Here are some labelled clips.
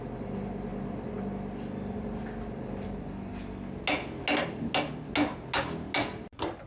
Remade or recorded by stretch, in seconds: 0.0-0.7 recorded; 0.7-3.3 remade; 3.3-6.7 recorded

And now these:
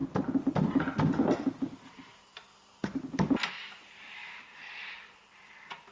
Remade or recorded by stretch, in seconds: 0.0-3.5 recorded; 3.5-5.9 remade

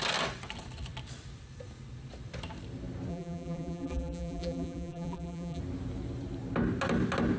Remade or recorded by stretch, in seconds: 0.0-3.1 recorded; 3.1-5.6 remade; 5.6-7.4 recorded

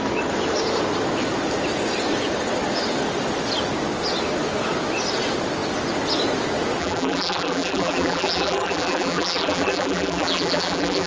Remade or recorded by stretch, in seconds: 0.0-6.8 recorded; 6.8-11.1 remade

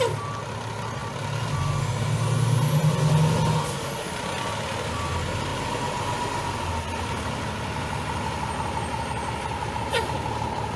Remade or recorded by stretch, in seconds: 0.0-10.8 recorded